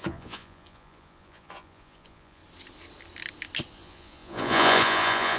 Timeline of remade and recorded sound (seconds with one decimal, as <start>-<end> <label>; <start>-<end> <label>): 0.0-2.4 remade; 2.4-3.7 recorded; 3.7-5.4 remade